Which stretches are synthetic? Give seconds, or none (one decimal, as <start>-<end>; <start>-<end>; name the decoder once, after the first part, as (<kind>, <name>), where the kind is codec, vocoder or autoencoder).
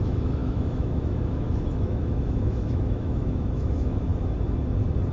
0.0-4.1 (autoencoder, DAC-VAE)